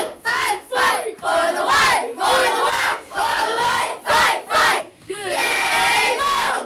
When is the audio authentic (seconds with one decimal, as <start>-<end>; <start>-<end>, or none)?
0.7-2.7; 3.9-4.8; 5.7-6.2